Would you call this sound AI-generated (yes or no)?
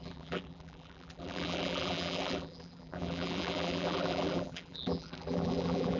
yes